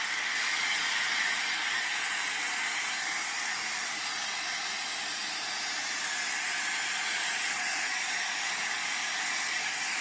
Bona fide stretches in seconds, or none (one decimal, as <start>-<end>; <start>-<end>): 1.9-2.9; 4.1-7.1